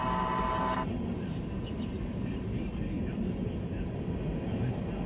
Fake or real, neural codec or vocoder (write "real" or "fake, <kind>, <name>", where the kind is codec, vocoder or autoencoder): real